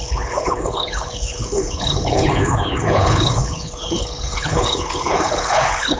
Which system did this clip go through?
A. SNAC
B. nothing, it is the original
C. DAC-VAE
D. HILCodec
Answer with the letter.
D